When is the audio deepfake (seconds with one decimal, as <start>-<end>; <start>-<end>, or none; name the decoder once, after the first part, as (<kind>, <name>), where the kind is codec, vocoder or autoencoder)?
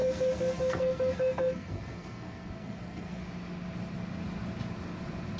0.0-3.2 (codec, SNAC)